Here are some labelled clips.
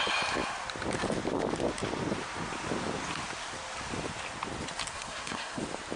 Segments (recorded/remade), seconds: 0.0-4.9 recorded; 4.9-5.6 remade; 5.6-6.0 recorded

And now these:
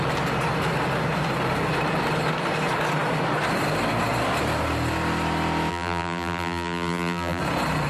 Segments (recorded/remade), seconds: 0.0-5.7 recorded; 5.7-7.4 remade; 7.4-7.9 recorded